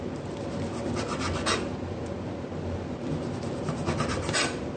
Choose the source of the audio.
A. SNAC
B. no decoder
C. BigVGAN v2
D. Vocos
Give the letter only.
B